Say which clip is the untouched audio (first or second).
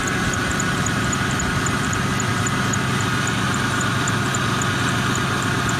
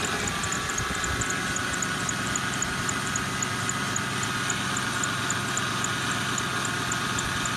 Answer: second